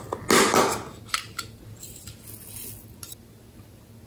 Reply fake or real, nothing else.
real